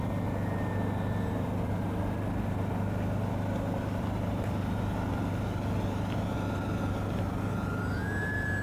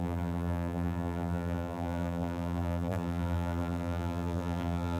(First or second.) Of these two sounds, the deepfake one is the second